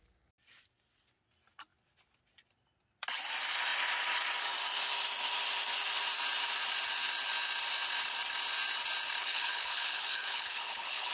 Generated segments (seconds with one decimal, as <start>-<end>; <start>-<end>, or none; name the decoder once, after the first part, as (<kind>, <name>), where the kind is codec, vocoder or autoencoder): 9.2-11.1 (codec, HILCodec)